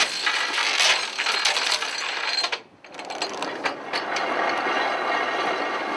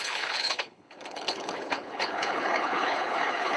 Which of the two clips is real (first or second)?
first